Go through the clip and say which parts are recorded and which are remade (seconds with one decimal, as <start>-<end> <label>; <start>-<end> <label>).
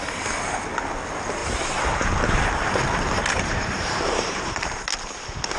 0.0-1.4 recorded; 1.4-4.8 remade; 4.8-5.6 recorded